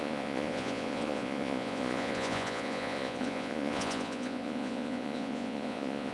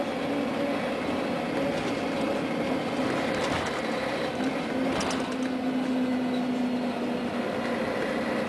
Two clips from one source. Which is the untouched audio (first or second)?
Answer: second